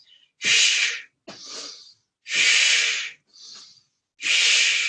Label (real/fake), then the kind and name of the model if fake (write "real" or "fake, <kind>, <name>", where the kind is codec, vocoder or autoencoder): real